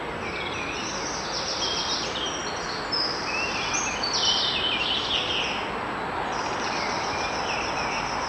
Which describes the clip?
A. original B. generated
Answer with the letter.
A